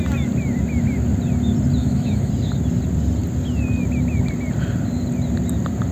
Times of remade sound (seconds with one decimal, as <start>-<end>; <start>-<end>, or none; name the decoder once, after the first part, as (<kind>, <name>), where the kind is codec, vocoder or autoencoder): 1.8-2.3 (autoencoder, DAC-VAE)